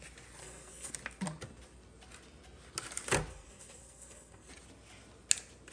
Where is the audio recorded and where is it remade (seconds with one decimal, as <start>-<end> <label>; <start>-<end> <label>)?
0.0-0.4 recorded; 0.4-0.9 remade; 0.9-3.3 recorded; 3.3-4.5 remade; 4.5-5.7 recorded